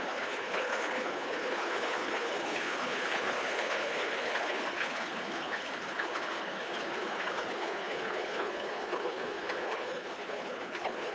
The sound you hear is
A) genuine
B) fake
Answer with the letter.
B